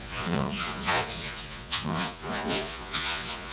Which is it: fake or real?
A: fake